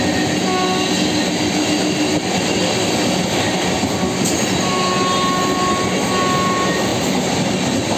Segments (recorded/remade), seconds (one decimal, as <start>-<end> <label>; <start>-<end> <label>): 0.0-8.0 recorded